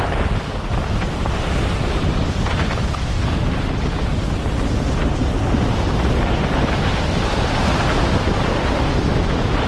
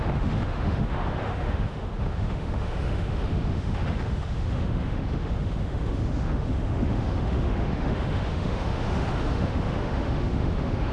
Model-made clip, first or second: second